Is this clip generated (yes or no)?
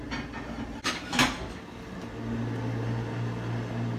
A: no